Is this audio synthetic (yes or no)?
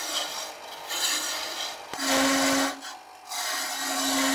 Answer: no